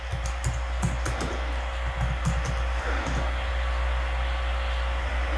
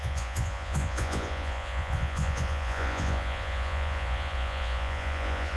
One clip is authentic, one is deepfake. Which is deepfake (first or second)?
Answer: second